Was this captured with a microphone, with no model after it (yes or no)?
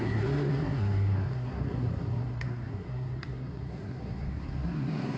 no